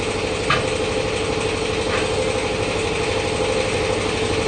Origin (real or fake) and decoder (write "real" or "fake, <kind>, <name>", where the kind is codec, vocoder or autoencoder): real